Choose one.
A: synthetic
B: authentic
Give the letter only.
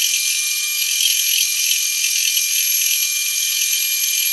A